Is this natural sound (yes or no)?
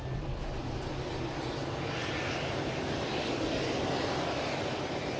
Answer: yes